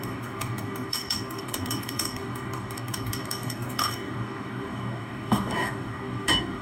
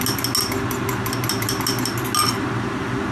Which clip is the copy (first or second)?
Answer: first